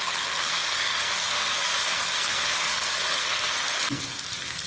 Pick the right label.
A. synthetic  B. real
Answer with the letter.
A